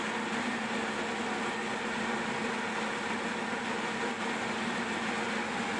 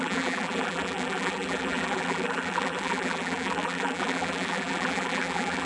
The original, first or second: first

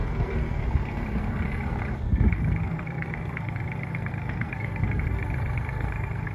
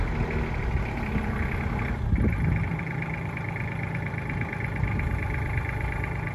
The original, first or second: second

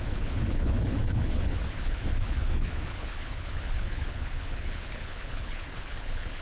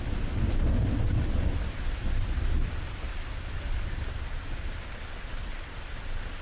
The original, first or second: second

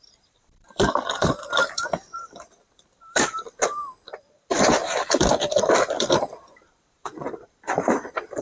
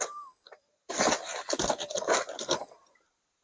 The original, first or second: second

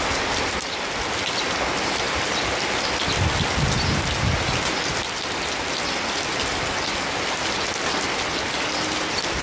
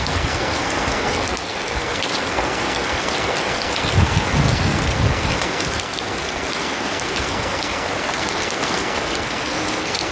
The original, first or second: first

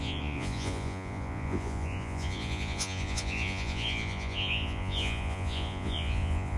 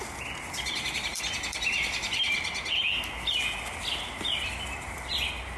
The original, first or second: second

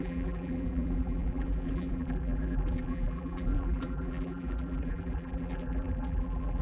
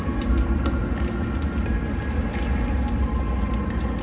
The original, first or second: second